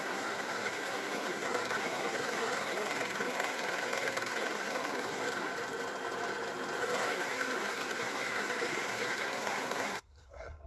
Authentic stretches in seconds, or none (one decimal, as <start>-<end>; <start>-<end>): 5.5-6.8